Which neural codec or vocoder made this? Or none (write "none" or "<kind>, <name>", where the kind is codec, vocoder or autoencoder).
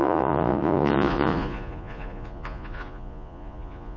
vocoder, Vocos